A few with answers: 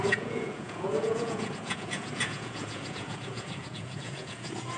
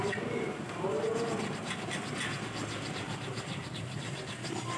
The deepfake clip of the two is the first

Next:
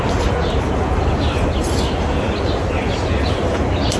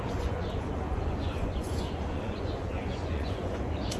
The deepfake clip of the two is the second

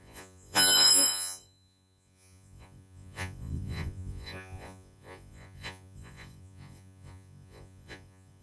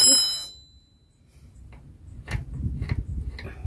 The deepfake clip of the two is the first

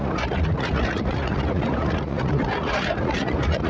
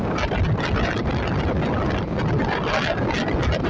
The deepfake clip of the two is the first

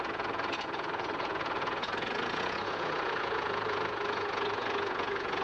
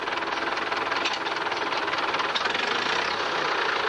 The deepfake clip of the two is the first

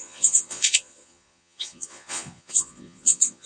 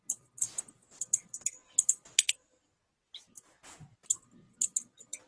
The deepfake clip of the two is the first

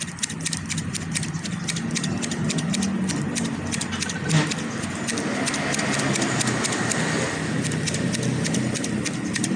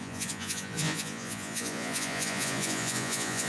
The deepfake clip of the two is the second